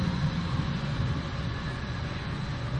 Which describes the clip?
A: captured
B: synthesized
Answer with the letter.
B